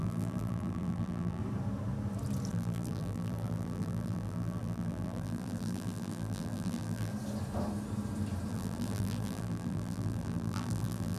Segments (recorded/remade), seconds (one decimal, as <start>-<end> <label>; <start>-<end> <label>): 0.0-1.4 remade; 1.4-2.5 recorded; 2.5-7.1 remade; 7.1-8.5 recorded; 8.5-11.2 remade

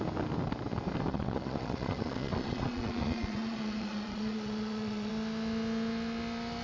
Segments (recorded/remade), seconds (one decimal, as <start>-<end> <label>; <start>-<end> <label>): 0.0-1.1 recorded; 1.1-5.1 remade; 5.1-6.6 recorded

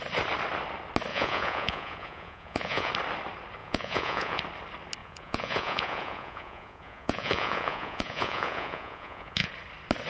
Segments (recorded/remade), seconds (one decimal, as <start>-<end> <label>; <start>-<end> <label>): 0.0-1.1 recorded; 1.1-2.9 remade; 2.9-3.6 recorded; 3.6-4.4 remade; 4.4-5.0 recorded; 5.0-9.5 remade; 9.5-10.1 recorded